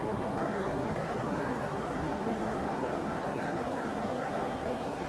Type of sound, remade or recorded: remade